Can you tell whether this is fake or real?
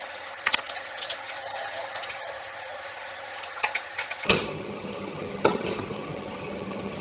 fake